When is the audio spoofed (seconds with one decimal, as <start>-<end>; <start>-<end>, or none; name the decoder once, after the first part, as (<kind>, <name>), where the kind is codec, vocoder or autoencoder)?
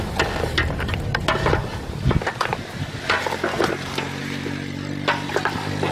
none